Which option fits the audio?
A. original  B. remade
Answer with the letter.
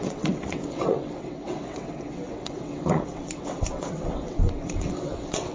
B